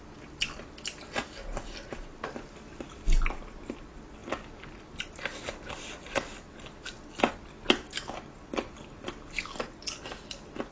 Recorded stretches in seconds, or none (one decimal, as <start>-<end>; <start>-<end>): 0.0-10.7